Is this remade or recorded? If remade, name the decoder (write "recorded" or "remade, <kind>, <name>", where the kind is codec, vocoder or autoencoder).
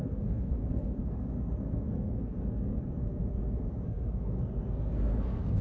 remade, codec, SNAC